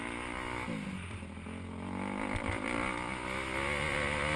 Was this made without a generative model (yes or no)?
yes